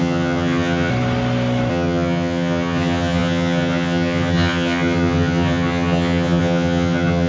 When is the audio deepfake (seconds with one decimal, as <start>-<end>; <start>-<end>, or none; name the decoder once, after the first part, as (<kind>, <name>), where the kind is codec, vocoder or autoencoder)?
0.0-0.9 (vocoder, HiFi-GAN); 1.7-7.3